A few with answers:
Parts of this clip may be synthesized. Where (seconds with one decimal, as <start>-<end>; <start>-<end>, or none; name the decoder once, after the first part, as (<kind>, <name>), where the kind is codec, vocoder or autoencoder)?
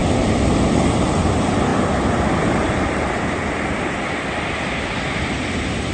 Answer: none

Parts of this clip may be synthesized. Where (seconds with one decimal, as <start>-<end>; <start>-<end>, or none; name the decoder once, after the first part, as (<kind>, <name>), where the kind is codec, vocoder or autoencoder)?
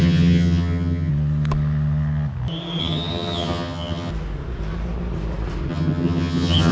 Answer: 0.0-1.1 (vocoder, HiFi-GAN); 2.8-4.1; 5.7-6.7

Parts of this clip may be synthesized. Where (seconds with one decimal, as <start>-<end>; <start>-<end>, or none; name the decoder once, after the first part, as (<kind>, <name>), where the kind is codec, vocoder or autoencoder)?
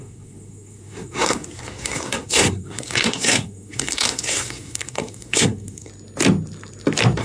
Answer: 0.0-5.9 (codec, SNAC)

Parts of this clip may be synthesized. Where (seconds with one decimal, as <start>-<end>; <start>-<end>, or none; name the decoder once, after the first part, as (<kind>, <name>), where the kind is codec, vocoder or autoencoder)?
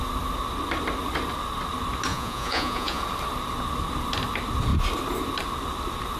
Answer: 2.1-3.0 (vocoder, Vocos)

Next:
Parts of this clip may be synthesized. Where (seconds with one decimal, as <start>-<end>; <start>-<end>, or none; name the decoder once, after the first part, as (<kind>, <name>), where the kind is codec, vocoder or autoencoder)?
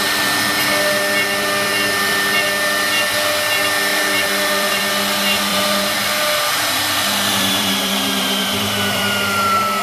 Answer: 3.9-4.8 (vocoder, BigVGAN v2); 5.5-9.0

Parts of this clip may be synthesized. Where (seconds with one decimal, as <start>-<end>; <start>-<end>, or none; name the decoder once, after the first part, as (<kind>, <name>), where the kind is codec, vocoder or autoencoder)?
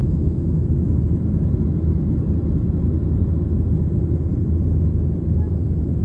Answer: 0.0-1.0 (autoencoder, DAC-VAE)